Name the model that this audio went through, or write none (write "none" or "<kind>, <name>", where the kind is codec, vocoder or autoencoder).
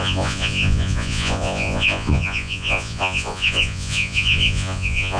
vocoder, Vocos